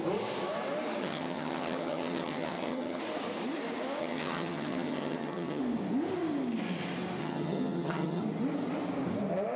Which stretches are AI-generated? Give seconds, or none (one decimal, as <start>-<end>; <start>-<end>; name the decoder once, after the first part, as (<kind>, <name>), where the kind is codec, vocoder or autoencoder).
1.0-3.0 (vocoder, HiFi-GAN); 4.0-5.6; 7.2-8.2